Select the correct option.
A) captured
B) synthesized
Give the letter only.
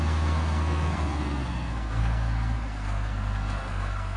B